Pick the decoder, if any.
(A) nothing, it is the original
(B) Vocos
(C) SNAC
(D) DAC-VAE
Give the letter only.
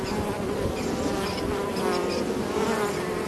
A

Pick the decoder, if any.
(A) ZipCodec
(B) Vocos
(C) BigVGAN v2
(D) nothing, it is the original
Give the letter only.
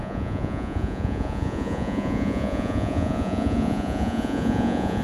B